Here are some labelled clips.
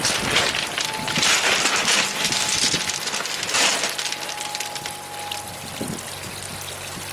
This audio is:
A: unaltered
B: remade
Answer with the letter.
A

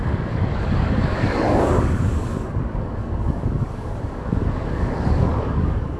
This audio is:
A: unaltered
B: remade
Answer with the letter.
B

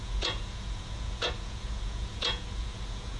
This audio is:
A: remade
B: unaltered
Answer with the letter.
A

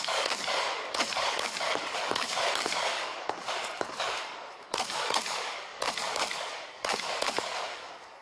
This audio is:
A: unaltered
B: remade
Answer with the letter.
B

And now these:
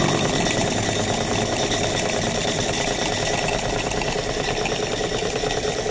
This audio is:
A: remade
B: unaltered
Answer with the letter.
B